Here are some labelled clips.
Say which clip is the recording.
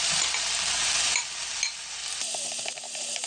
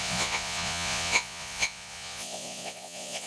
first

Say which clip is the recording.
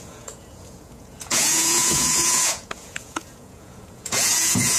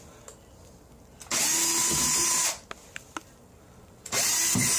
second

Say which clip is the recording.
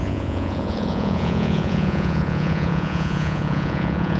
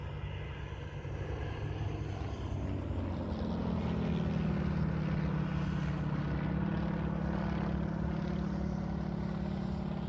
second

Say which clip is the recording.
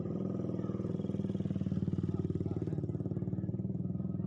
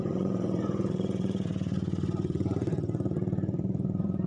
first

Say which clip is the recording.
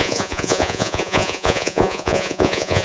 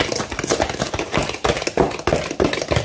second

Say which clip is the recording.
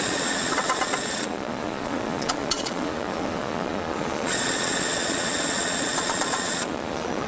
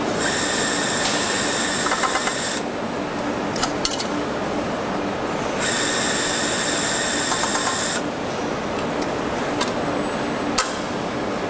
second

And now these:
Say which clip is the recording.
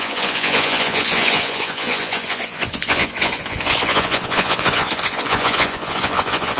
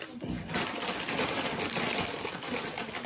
second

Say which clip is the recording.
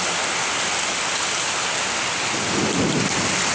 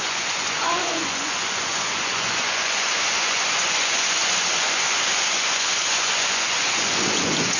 first